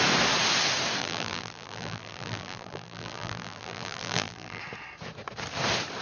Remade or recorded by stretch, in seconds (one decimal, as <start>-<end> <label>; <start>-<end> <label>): 0.0-1.0 recorded; 1.0-4.6 remade; 4.6-6.0 recorded